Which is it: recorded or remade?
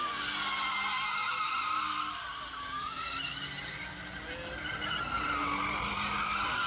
recorded